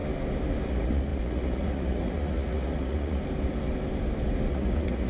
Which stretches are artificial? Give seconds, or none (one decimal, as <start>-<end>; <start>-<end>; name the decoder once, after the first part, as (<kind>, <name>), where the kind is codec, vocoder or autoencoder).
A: 0.7-3.2 (vocoder, Vocos); 4.5-5.1